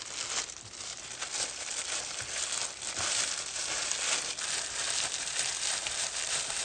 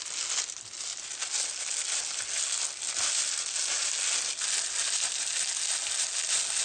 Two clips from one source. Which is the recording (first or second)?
second